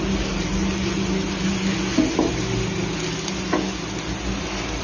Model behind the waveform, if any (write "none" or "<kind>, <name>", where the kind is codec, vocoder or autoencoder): none